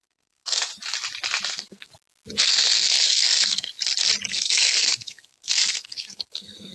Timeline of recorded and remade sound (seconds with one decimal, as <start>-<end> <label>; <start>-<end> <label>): 0.0-0.7 remade; 0.7-1.5 recorded; 1.5-1.9 remade; 1.9-2.4 recorded; 2.4-3.7 remade; 3.7-4.3 recorded; 4.3-6.7 remade